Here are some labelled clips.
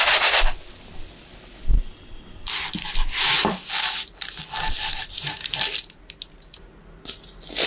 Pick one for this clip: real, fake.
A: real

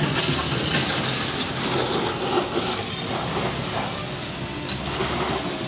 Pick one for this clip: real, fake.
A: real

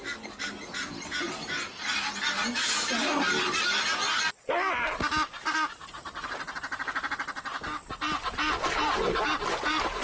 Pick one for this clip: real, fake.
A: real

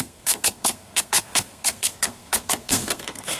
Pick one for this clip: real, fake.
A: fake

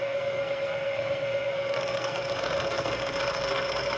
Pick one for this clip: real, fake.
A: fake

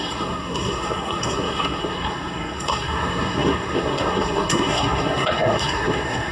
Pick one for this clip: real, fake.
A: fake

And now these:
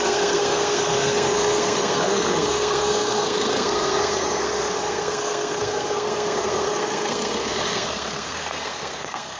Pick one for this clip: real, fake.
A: fake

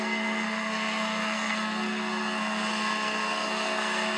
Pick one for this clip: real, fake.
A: fake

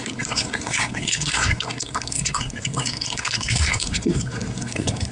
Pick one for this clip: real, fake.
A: fake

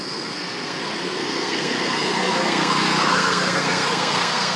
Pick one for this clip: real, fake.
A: fake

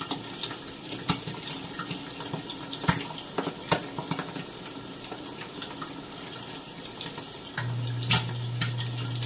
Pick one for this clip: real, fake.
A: real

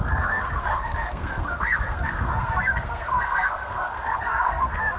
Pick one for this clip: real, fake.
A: fake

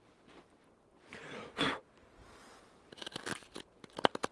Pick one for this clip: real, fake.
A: real